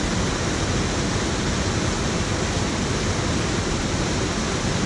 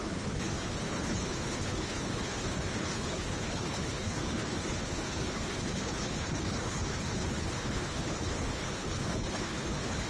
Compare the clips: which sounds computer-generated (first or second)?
second